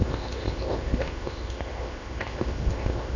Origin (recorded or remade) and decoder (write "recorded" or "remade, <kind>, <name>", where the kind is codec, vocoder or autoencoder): remade, codec, ZipCodec